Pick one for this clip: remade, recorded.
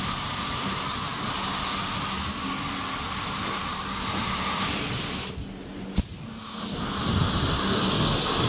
recorded